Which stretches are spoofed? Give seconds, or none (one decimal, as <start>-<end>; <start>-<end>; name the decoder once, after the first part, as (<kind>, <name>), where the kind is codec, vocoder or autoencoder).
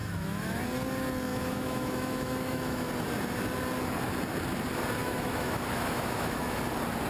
0.0-0.6 (autoencoder, DAC-VAE); 1.3-2.9; 5.0-6.6